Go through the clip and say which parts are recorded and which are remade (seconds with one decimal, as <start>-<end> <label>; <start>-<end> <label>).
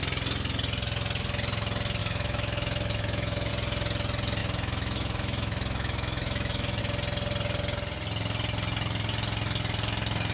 0.0-2.0 recorded; 2.0-3.5 remade; 3.5-4.4 recorded; 4.4-6.8 remade; 6.8-10.3 recorded